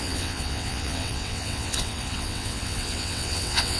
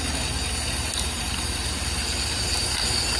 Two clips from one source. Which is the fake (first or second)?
first